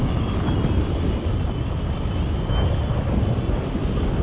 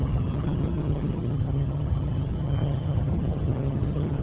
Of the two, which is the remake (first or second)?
second